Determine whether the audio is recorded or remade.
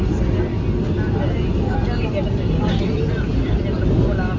recorded